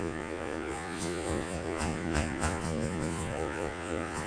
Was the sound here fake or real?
fake